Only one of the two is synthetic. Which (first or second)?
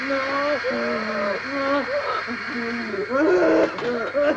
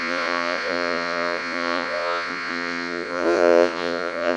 second